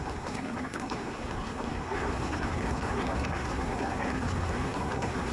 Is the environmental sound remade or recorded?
remade